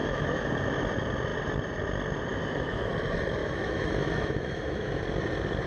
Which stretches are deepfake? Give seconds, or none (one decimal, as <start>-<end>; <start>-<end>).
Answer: 0.0-0.5; 2.3-2.9; 3.4-5.0